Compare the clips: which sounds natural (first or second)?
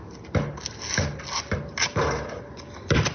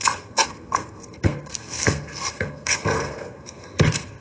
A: first